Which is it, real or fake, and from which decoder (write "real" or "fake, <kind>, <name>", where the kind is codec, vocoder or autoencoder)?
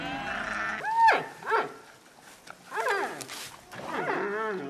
real